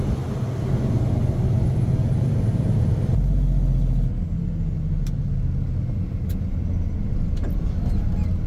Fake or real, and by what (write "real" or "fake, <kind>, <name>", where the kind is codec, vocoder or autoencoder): real